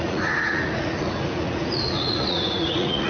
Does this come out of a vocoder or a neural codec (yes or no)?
yes